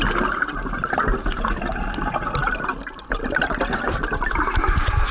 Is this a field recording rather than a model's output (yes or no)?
yes